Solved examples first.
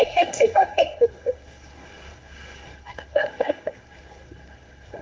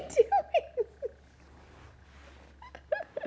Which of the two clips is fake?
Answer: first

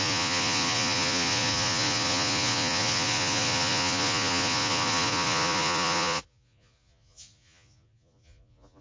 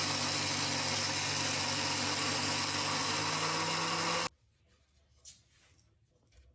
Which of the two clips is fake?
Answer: first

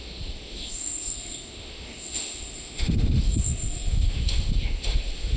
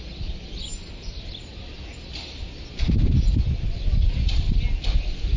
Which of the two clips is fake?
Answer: first